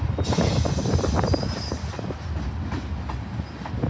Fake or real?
real